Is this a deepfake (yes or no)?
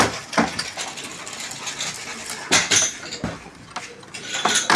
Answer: no